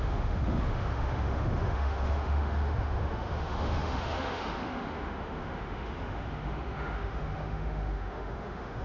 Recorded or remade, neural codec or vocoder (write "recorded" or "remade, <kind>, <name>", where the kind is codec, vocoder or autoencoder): remade, autoencoder, DAC-VAE